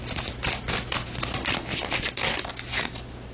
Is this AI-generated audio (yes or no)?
no